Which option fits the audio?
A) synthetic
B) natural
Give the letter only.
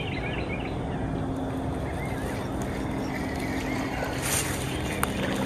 B